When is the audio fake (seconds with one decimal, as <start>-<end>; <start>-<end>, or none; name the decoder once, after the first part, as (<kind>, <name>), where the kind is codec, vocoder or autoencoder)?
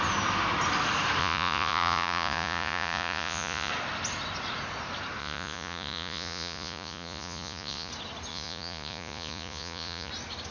1.2-3.7 (vocoder, Vocos); 5.2-7.9; 8.3-10.1